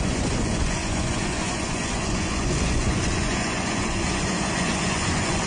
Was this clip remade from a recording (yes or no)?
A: yes